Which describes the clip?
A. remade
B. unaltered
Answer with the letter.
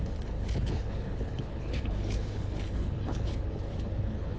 A